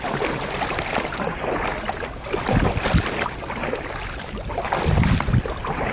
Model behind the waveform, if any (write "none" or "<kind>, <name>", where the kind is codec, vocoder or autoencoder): none